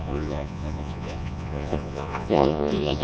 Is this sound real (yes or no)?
no